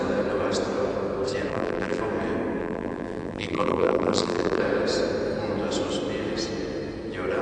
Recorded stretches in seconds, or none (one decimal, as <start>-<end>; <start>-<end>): 0.0-1.5; 2.0-2.6; 4.6-7.4